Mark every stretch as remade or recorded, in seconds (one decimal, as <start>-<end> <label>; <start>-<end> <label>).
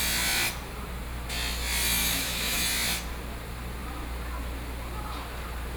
0.0-2.0 recorded; 2.0-2.6 remade; 2.6-5.8 recorded